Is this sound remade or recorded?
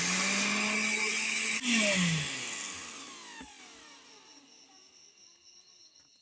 recorded